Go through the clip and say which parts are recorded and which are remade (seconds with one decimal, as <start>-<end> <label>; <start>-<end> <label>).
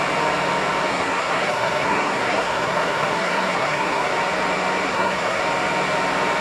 0.0-0.9 recorded; 0.9-4.1 remade; 4.1-4.9 recorded; 4.9-5.4 remade; 5.4-6.4 recorded